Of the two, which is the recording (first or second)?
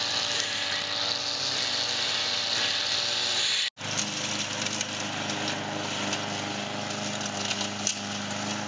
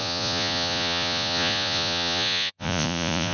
first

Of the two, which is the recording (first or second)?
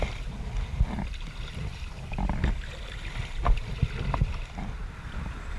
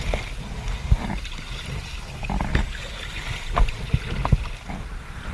second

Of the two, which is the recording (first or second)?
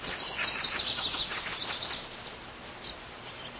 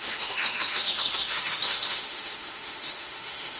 first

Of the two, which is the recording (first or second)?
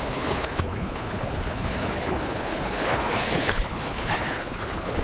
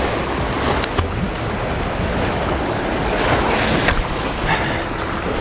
second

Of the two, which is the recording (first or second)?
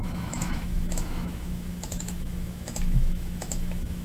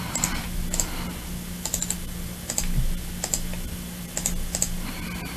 second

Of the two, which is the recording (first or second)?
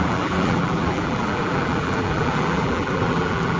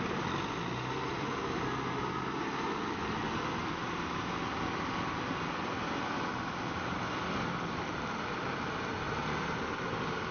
second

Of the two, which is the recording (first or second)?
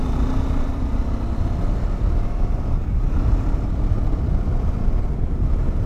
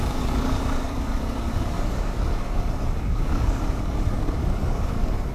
first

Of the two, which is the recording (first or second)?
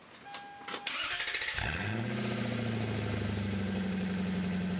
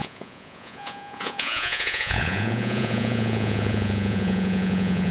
first